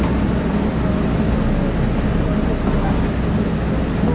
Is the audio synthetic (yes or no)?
no